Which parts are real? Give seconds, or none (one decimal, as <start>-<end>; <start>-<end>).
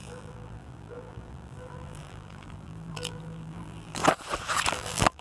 4.0-4.7